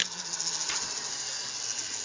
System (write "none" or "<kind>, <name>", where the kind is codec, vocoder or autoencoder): none